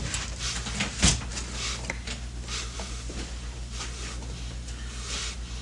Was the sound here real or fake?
real